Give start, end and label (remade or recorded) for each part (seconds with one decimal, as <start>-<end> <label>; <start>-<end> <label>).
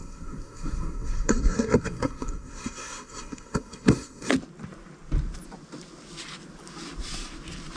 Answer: 0.0-4.3 remade; 4.3-7.8 recorded